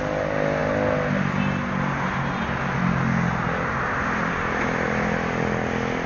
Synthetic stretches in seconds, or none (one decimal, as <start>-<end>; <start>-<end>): none